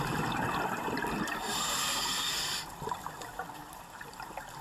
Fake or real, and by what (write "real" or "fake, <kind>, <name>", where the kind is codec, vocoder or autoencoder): fake, vocoder, BigVGAN v2